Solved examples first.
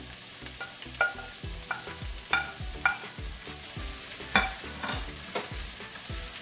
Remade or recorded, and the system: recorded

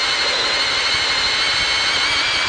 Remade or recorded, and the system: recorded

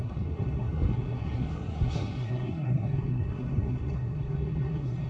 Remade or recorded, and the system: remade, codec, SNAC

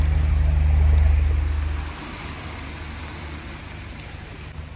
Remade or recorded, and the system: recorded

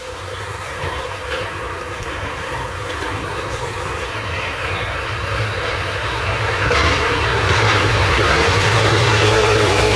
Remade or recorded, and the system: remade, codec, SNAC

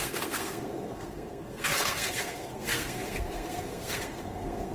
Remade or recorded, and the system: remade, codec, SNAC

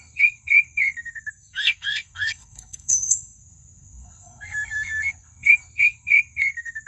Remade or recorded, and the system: remade, codec, SNAC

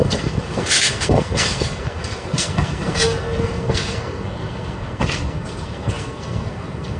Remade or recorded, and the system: remade, codec, SNAC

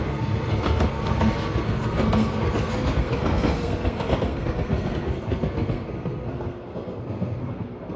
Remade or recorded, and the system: remade, codec, SNAC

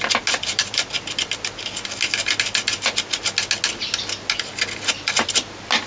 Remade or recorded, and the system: recorded